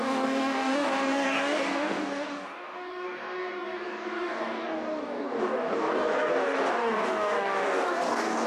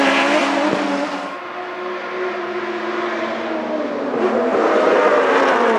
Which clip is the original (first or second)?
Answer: second